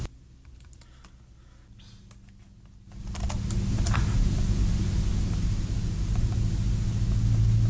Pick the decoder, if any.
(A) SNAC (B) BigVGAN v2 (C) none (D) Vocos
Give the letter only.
C